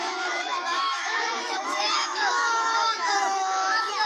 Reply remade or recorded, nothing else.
remade